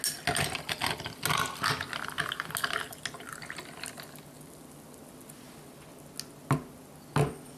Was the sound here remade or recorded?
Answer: recorded